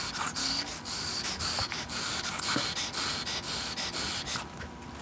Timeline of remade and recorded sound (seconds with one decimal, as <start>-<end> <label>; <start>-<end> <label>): 0.0-0.4 recorded; 0.4-2.4 remade; 2.4-5.0 recorded